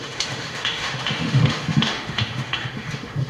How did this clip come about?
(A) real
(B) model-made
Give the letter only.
B